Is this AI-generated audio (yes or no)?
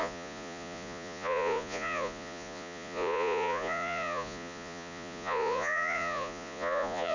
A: yes